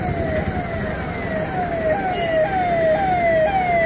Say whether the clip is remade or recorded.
recorded